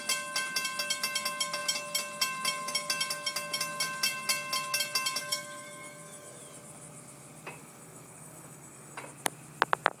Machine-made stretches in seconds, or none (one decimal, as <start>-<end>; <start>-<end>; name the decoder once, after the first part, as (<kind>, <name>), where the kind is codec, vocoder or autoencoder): 5.2-6.4 (codec, DAC); 7.6-9.0